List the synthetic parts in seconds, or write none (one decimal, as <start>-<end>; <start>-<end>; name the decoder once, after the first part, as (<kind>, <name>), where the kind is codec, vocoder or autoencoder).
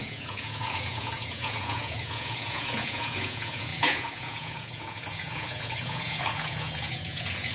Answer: 0.0-7.5 (vocoder, Vocos)